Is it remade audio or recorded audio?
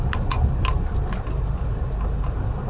recorded